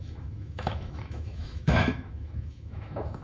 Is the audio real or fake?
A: fake